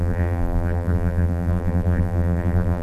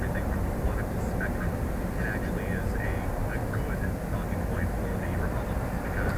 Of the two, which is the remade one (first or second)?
first